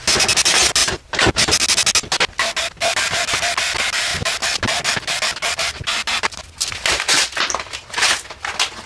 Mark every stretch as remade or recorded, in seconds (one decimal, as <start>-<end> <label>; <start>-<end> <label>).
0.0-0.8 recorded; 0.8-1.4 remade; 1.4-8.9 recorded